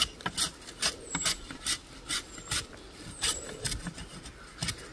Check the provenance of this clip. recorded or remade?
recorded